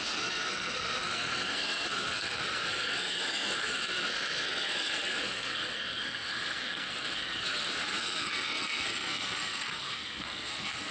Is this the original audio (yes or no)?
no